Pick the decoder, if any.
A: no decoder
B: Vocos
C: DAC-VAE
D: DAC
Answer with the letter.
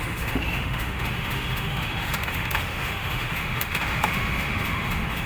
C